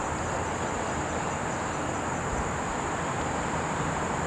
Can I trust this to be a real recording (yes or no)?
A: yes